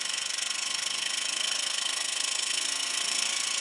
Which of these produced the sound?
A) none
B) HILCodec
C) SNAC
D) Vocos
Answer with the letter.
C